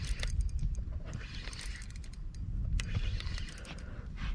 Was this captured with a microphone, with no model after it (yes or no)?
yes